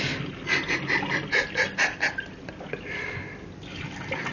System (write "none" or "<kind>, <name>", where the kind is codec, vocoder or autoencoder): none